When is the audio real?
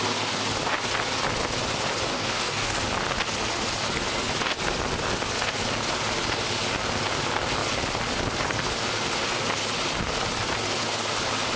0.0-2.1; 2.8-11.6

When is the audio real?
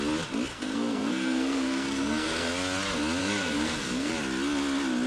0.0-0.5; 2.5-3.2; 4.1-5.1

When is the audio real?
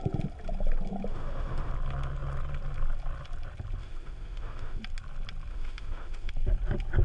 0.0-1.1; 1.7-3.8; 4.8-5.5; 6.3-7.0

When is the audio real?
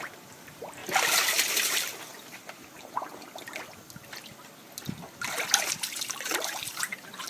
0.8-1.5; 2.1-5.6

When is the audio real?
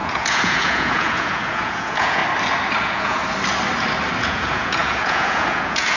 2.2-2.8; 3.2-4.2